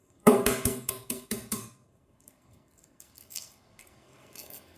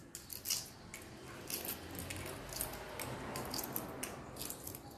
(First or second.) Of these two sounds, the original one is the second